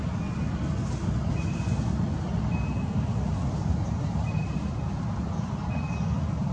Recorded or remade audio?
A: recorded